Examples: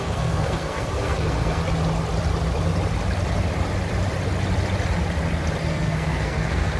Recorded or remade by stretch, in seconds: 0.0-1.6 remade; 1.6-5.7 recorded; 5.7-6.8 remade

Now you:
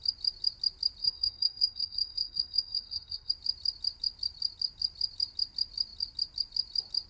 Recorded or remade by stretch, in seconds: 0.0-1.0 recorded; 1.0-3.3 remade; 3.3-7.1 recorded

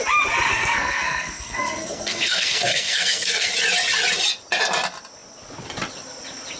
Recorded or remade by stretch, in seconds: 0.0-0.5 recorded; 0.5-3.5 remade; 3.5-6.6 recorded

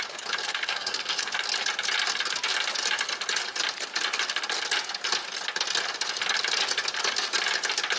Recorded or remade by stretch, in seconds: 0.0-0.4 recorded; 0.4-1.3 remade; 1.3-8.0 recorded

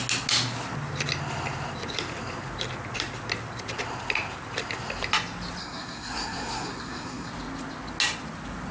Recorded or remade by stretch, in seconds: 0.0-5.6 recorded; 5.6-7.3 remade; 7.3-8.7 recorded

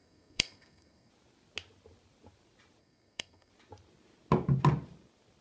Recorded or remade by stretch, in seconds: 0.0-1.1 remade; 1.1-2.8 recorded; 2.8-3.5 remade; 3.5-5.4 recorded

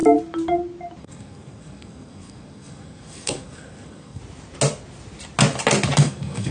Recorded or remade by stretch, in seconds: 0.0-1.0 recorded; 1.0-4.2 remade; 4.2-6.0 recorded; 6.0-6.5 remade

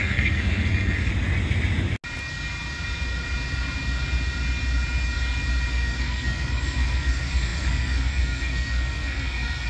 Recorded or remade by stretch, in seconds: 0.0-1.1 remade; 1.1-5.7 recorded; 5.7-9.7 remade